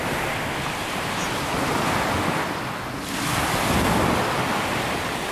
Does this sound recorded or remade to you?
recorded